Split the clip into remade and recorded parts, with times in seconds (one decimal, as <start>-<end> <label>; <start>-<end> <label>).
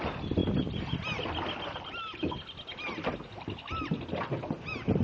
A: 0.0-5.0 recorded